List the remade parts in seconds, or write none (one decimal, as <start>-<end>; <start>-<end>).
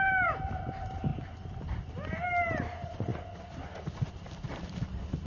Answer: 0.0-1.1; 1.9-5.3